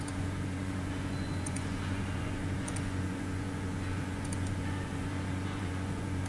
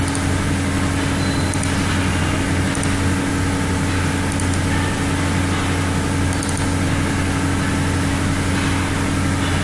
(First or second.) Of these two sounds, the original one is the second